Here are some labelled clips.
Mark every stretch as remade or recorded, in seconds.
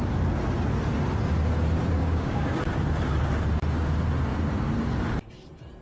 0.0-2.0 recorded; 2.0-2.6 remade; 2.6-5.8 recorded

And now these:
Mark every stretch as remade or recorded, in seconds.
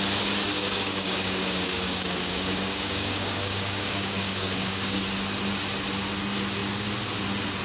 0.0-0.6 recorded; 0.6-5.0 remade; 5.0-7.6 recorded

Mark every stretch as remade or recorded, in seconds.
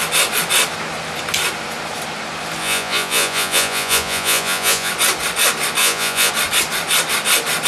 0.0-2.6 recorded; 2.6-4.9 remade; 4.9-5.8 recorded; 5.8-6.3 remade; 6.3-7.7 recorded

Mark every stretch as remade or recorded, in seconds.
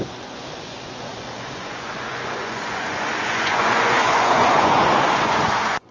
0.0-5.9 remade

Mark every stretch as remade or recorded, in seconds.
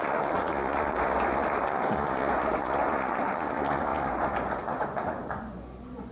0.0-6.1 remade